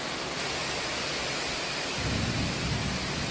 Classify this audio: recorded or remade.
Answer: recorded